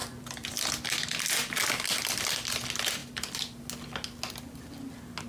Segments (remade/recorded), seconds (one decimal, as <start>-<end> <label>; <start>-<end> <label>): 0.0-0.5 remade; 0.5-3.0 recorded; 3.0-3.6 remade; 3.6-5.3 recorded